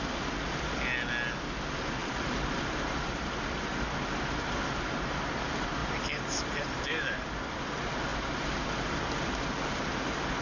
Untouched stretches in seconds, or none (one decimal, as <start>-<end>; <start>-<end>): 0.0-2.0; 3.3-5.8; 7.3-10.4

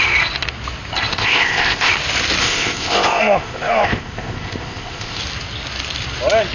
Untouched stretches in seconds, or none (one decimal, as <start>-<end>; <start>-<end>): 0.0-1.1; 1.9-2.4; 5.2-6.5

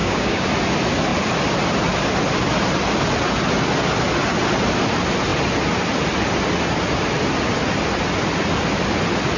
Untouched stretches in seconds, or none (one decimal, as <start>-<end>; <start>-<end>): 0.5-9.4

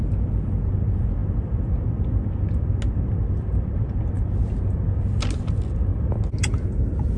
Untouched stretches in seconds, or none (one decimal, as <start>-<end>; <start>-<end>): 0.0-7.2